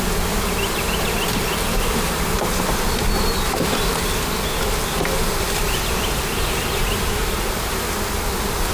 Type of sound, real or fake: real